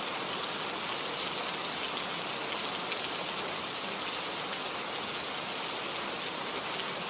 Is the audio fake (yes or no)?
no